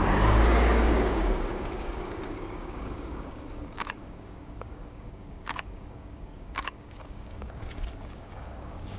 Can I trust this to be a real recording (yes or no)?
no